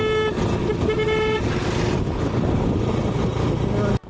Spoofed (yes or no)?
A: no